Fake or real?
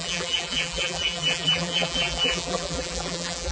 fake